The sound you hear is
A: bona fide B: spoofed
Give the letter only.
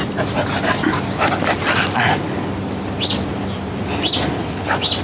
A